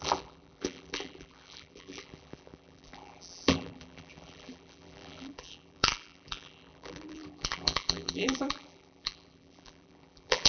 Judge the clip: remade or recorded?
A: remade